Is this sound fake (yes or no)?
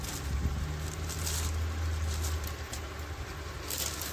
no